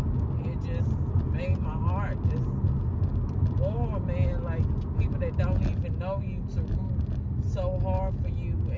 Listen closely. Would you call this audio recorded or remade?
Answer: recorded